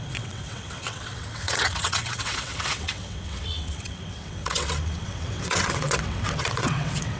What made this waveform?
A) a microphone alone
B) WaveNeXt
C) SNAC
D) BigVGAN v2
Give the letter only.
B